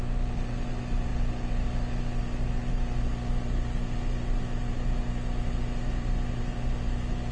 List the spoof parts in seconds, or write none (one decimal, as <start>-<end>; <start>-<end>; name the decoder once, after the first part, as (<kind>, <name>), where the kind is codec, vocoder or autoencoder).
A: none